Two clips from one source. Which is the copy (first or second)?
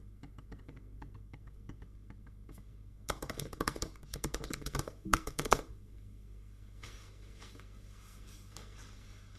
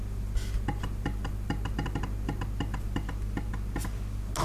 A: first